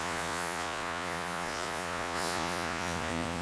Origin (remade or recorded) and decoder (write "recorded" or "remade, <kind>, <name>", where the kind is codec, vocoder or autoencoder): remade, vocoder, Vocos